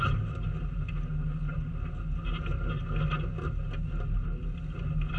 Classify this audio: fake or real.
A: real